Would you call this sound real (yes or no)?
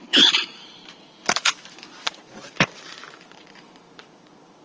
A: no